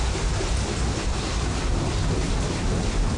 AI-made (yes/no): no